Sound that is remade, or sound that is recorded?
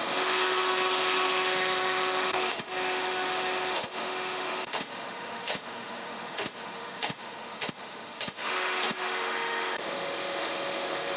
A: remade